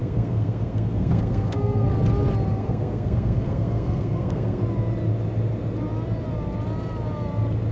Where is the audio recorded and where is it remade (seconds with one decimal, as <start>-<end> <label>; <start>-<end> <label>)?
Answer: 0.0-1.9 remade; 1.9-2.6 recorded; 2.6-4.6 remade; 4.6-7.7 recorded